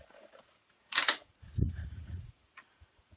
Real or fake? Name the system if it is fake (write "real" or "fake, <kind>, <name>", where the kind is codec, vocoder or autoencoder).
fake, vocoder, Vocos